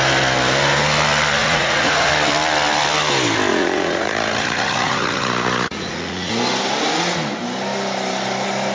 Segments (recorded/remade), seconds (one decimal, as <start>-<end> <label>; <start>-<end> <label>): 0.0-1.4 recorded; 1.4-2.1 remade; 2.1-3.5 recorded; 3.5-6.3 remade; 6.3-8.7 recorded